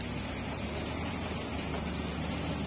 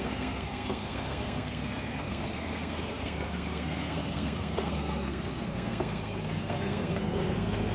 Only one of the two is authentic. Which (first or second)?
first